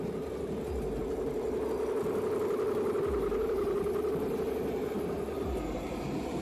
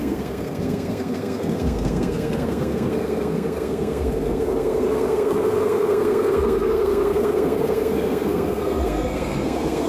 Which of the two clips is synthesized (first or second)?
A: second